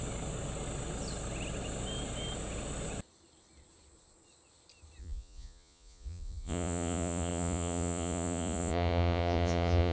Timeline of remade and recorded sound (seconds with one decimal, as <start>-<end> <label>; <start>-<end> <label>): 0.0-5.0 recorded; 5.0-9.9 remade